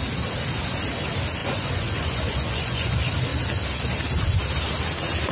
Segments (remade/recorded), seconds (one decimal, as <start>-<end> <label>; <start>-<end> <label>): 0.0-1.4 recorded; 1.4-2.9 remade; 2.9-5.3 recorded